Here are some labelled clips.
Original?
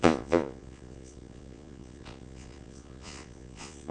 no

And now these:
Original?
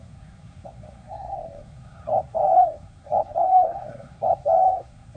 no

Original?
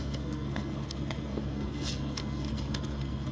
no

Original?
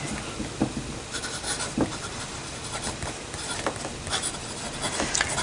yes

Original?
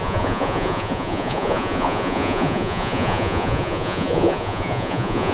no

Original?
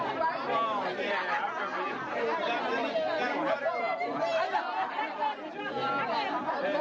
yes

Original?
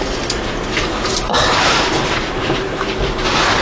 yes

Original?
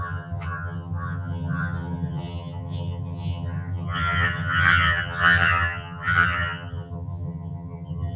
no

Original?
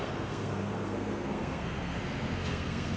no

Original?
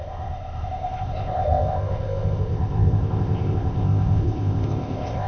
no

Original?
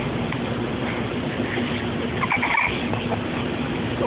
yes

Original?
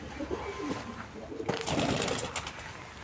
yes